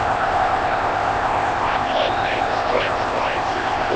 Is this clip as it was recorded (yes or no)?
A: no